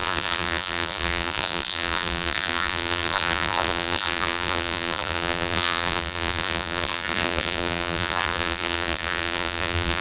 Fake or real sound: fake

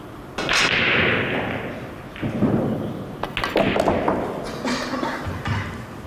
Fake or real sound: real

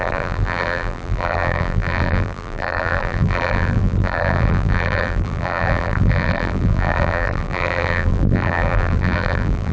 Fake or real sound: fake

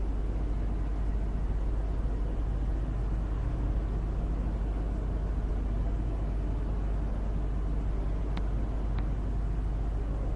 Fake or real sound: real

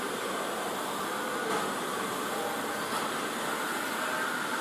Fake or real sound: real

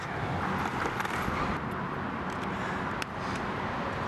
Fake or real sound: real